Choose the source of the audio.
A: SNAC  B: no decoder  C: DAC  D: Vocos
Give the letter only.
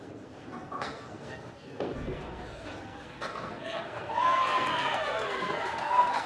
A